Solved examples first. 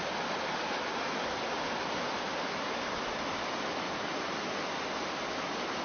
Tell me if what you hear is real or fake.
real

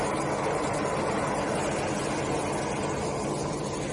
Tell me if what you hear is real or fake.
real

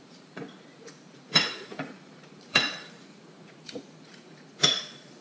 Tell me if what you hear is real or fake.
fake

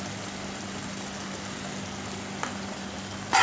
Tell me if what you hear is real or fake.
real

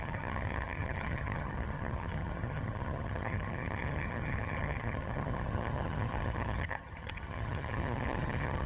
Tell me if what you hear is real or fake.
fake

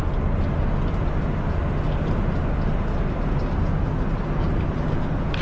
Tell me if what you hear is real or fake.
real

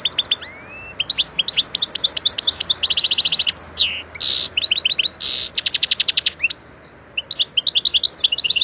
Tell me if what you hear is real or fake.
real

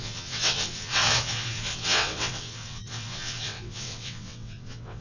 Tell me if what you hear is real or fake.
fake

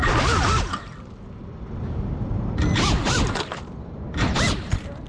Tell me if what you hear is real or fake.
real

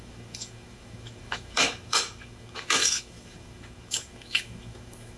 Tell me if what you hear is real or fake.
fake